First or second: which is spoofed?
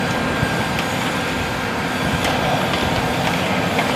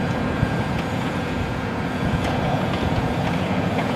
second